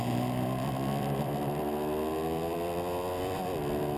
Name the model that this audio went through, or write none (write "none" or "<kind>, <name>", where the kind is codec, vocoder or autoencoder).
vocoder, BigVGAN v2